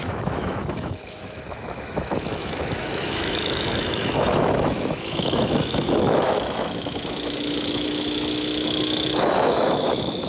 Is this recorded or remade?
remade